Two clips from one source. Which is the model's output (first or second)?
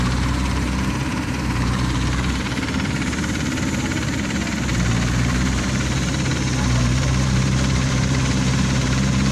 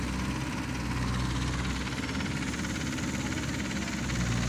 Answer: first